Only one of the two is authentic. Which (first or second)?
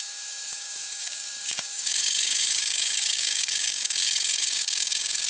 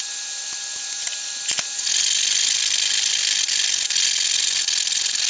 second